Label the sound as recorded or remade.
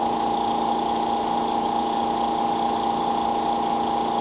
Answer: recorded